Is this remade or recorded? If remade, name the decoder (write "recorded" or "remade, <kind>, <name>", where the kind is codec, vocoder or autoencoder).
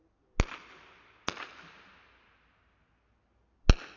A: recorded